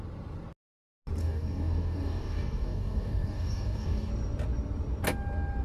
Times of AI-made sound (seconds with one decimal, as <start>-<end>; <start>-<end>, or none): 1.2-4.1